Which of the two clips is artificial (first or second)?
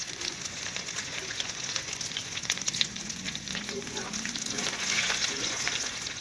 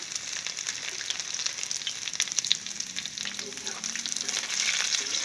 first